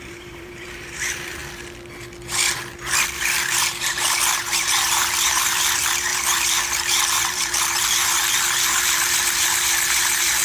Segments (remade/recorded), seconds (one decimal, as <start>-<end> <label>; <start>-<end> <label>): 0.0-1.4 remade; 1.4-3.2 recorded; 3.2-10.4 remade